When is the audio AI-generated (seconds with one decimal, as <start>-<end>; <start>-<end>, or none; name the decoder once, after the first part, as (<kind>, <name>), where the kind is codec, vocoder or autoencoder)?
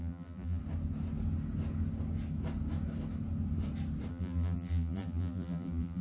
0.0-0.6 (vocoder, BigVGAN v2); 4.1-6.0